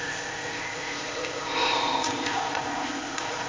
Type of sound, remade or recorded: remade